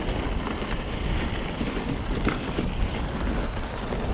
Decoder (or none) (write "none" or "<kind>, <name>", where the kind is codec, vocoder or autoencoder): none